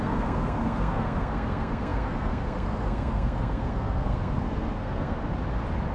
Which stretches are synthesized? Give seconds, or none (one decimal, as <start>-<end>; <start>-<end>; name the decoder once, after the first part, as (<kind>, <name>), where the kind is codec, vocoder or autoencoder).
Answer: 0.0-5.2 (codec, SNAC)